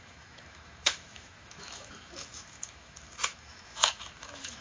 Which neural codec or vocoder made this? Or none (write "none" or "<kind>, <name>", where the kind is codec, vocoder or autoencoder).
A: autoencoder, DAC-VAE